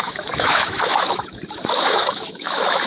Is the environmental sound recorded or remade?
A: remade